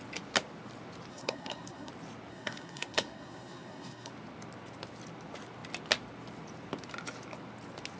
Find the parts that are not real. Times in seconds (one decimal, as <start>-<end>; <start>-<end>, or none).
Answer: 1.1-1.9; 2.3-4.1